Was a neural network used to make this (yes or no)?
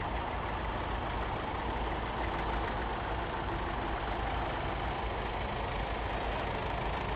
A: no